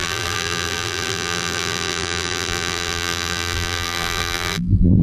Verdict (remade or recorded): remade